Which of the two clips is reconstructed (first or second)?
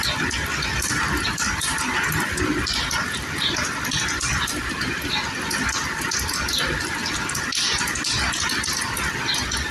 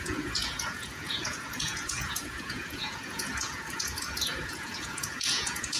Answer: second